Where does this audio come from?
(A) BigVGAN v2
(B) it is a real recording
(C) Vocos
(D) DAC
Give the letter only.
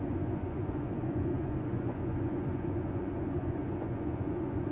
C